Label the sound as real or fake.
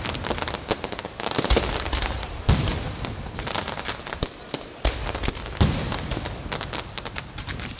real